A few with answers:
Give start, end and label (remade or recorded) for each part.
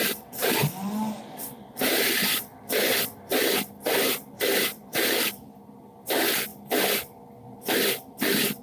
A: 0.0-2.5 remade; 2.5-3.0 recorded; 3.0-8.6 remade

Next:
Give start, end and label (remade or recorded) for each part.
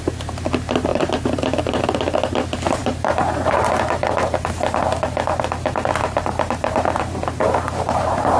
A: 0.0-0.9 recorded; 0.9-1.8 remade; 1.8-2.8 recorded; 2.8-3.6 remade; 3.6-6.0 recorded; 6.0-8.4 remade